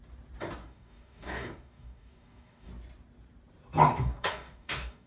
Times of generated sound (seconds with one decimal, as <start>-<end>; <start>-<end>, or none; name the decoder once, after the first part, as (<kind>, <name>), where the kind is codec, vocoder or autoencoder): 0.6-2.7 (codec, DAC); 3.9-5.1